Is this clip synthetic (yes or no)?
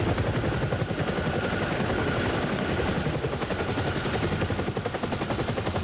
no